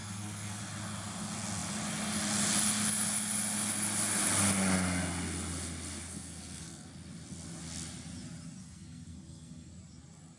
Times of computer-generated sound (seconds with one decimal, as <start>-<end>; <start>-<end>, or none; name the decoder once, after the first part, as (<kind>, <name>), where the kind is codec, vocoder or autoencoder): 0.0-0.6 (codec, SNAC); 6.1-6.9; 8.6-9.7